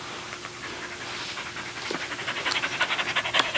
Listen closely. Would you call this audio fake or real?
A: real